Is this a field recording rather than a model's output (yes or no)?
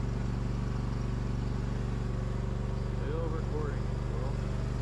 yes